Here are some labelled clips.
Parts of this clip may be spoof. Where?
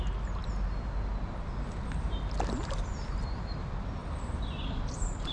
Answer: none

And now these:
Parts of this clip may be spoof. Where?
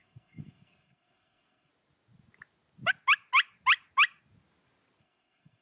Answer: 0.0-1.7 (codec, SNAC); 5.0-5.6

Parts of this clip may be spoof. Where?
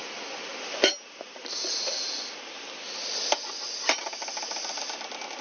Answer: none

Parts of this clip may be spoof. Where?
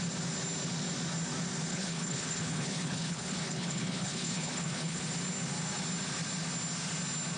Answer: 1.7-5.0 (codec, HILCodec)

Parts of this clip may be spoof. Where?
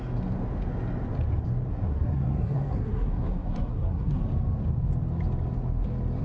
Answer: 1.7-4.2 (codec, SNAC)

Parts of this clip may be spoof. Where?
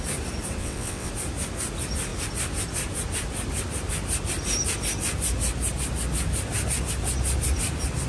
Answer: 0.6-1.1 (vocoder, WaveNeXt)